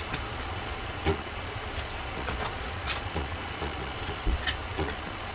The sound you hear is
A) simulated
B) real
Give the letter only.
A